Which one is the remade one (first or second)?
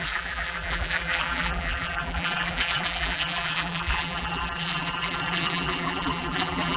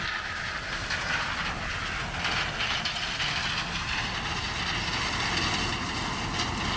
first